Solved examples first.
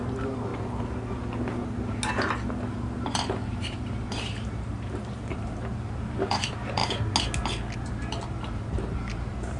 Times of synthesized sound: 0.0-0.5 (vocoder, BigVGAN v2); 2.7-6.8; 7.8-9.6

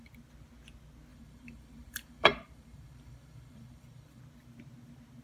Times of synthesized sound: 1.1-4.2 (vocoder, BigVGAN v2)